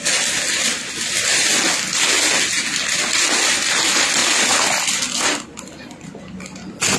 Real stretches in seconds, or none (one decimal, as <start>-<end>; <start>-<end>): 0.7-3.5